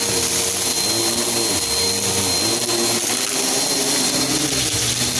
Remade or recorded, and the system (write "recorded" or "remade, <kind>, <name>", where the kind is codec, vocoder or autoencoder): recorded